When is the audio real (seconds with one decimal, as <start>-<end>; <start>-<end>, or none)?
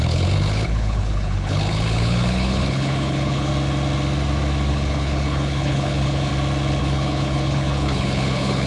3.5-4.7; 6.3-6.8